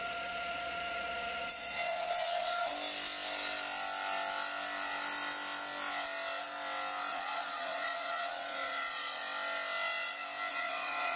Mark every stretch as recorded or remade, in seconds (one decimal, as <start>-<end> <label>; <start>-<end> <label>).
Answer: 0.0-2.7 remade; 2.7-7.1 recorded; 7.1-9.2 remade; 9.2-10.5 recorded; 10.5-11.2 remade